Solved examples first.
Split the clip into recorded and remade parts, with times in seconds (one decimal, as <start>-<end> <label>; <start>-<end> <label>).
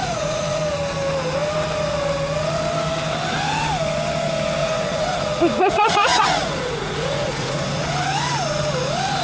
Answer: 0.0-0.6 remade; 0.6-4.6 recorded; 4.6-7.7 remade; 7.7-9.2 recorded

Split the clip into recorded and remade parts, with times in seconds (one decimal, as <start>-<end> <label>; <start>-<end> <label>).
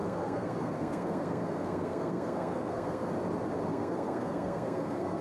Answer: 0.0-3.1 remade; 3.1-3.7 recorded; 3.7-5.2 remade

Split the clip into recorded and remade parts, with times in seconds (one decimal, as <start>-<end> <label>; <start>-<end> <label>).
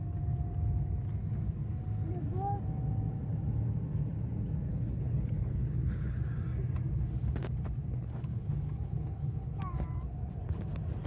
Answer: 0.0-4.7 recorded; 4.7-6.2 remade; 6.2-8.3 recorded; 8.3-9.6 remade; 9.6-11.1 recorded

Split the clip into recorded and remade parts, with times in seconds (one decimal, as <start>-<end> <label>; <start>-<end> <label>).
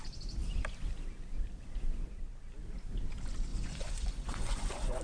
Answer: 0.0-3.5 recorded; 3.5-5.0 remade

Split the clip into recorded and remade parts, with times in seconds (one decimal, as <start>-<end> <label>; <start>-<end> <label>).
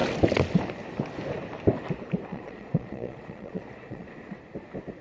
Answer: 0.0-2.3 recorded; 2.3-4.4 remade; 4.4-5.0 recorded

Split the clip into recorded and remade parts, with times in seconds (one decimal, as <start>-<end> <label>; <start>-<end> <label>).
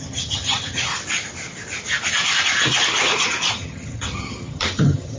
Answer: 0.0-0.9 remade; 0.9-3.5 recorded; 3.5-5.2 remade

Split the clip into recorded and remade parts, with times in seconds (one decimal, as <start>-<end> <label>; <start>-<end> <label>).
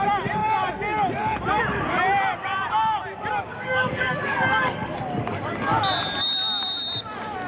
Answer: 0.0-3.5 recorded; 3.5-5.8 remade; 5.8-7.5 recorded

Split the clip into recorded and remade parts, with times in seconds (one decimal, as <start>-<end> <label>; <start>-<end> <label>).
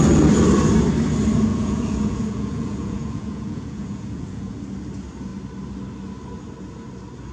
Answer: 0.0-1.5 recorded; 1.5-4.6 remade; 4.6-7.3 recorded